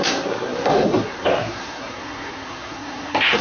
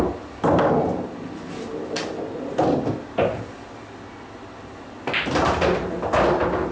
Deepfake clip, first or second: first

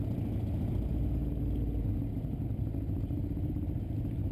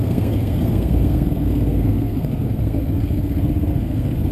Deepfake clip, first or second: second